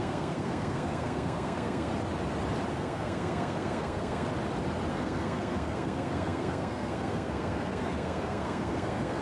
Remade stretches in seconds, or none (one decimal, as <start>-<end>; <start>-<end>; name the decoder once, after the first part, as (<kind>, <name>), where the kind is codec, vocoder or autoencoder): 0.0-1.9 (codec, SNAC); 2.7-4.3; 4.9-9.2